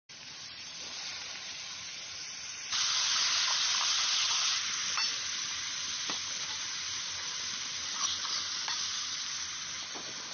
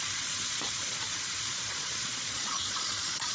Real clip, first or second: first